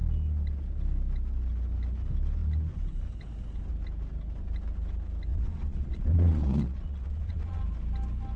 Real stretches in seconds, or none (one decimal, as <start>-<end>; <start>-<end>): 0.0-5.3; 7.6-8.4